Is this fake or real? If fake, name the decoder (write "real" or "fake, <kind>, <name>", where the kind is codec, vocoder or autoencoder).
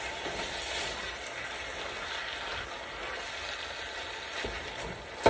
real